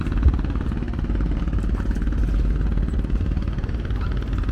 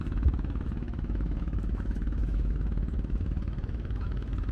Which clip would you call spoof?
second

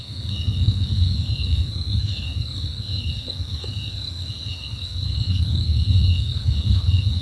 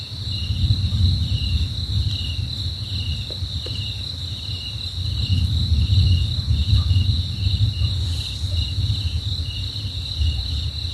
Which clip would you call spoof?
first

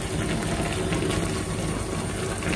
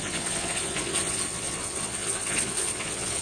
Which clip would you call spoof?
second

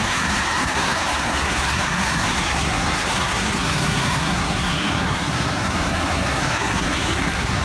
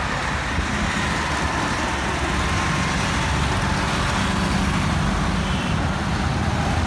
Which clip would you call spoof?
first